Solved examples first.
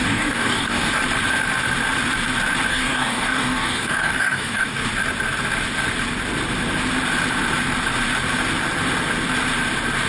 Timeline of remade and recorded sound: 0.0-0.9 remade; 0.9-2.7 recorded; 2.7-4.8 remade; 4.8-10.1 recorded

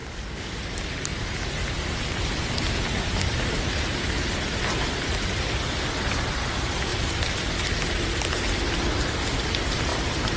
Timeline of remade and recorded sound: 0.0-0.6 remade; 0.6-10.4 recorded

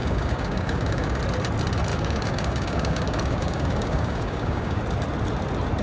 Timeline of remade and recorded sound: 0.0-1.2 remade; 1.2-1.9 recorded; 1.9-4.8 remade; 4.8-5.8 recorded